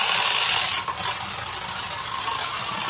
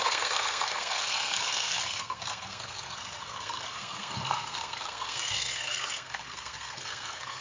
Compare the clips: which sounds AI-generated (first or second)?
second